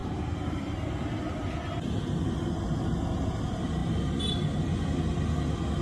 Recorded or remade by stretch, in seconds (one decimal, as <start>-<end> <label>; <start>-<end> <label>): 0.0-1.4 remade; 1.4-5.8 recorded